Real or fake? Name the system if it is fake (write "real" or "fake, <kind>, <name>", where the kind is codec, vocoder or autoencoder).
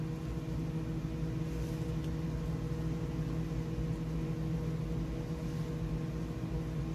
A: real